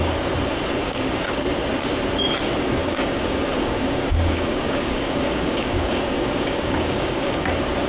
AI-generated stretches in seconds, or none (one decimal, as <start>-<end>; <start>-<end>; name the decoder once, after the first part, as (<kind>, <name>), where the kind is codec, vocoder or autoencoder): 0.8-1.4 (codec, DAC); 2.8-7.5